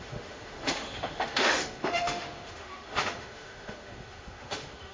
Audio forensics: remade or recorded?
remade